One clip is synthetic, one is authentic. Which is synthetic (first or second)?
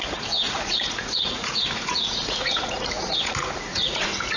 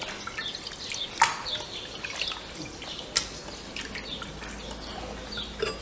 first